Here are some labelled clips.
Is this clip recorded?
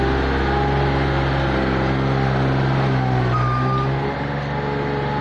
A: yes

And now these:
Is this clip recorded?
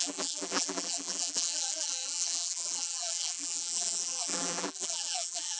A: no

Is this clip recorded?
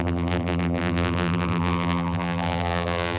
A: no